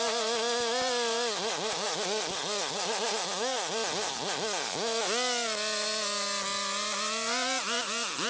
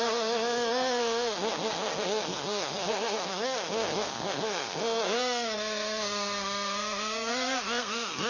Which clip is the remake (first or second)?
second